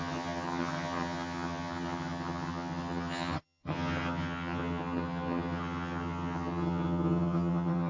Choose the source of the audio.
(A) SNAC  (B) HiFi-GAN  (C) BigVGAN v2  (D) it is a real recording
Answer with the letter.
B